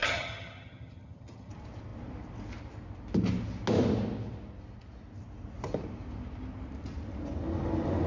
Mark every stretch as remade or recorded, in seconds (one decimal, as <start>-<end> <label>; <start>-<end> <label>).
0.0-1.5 remade; 1.5-8.1 recorded